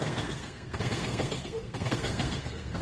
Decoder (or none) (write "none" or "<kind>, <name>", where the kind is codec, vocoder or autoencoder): codec, SNAC